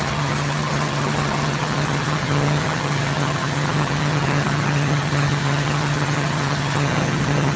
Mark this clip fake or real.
fake